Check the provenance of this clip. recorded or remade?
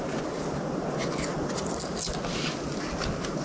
recorded